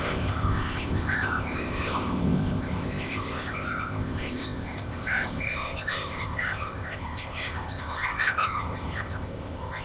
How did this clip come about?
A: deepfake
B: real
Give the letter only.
A